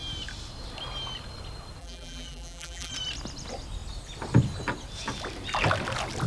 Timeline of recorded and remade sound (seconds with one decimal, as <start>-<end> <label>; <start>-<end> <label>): 0.0-1.8 recorded; 1.8-2.9 remade; 2.9-6.3 recorded